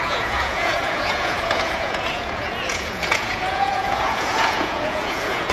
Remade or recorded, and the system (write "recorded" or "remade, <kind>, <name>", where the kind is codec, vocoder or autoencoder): remade, vocoder, Vocos